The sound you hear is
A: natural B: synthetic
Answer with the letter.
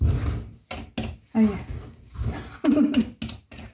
A